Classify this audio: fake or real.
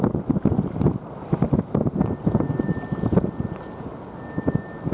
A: real